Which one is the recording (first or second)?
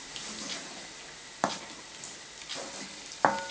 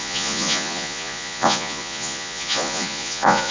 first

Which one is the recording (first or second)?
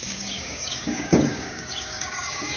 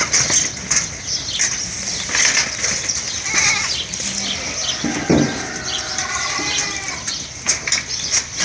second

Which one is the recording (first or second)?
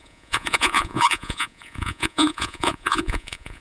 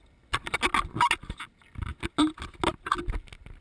second